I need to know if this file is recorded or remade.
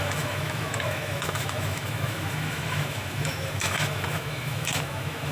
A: remade